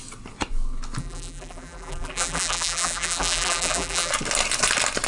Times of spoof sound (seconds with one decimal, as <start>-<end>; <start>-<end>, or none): 1.0-4.1